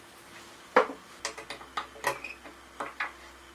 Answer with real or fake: real